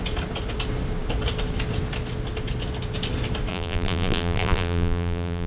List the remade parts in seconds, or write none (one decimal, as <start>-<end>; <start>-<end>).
3.5-5.5